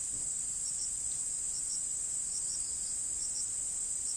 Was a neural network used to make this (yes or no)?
no